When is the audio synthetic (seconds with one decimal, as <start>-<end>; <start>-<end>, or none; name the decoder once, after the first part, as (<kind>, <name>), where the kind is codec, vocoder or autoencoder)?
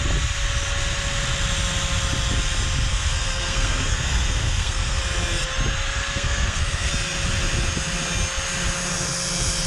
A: 2.9-5.0 (codec, SNAC); 6.0-6.9